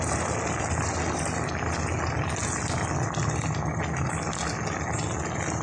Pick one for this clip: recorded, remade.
recorded